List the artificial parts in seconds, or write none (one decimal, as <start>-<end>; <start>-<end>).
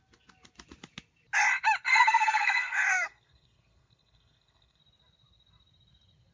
1.9-4.8